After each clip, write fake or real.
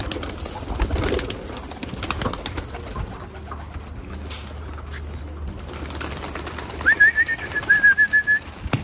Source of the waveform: real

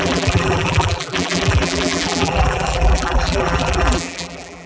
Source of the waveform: fake